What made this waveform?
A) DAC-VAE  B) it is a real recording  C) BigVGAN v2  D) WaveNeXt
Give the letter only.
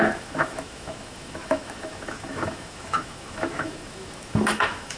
A